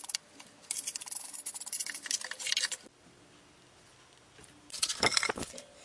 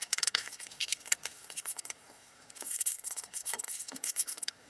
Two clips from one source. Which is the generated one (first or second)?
second